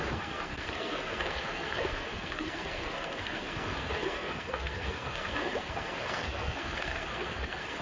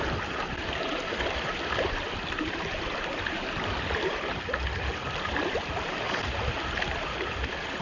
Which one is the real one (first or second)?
second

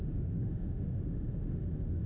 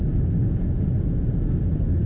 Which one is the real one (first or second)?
second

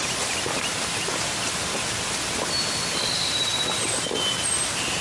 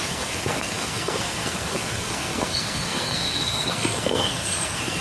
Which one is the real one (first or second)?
first